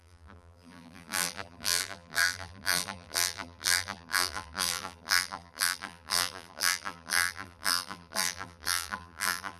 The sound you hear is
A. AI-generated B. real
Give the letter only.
A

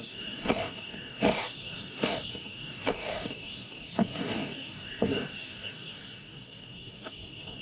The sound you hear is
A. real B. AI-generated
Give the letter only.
B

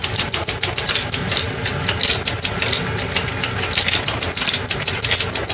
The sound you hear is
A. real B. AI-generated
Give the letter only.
A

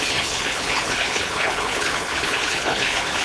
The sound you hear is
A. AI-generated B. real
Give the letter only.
A